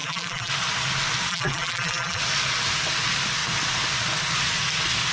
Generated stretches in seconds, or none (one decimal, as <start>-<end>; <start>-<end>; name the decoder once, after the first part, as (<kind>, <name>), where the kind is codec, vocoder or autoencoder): 0.0-0.5 (vocoder, BigVGAN v2); 1.3-2.2